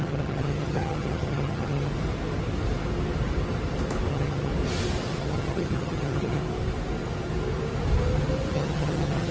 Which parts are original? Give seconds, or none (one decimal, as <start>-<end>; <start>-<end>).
1.9-4.1; 4.5-5.2; 6.4-8.5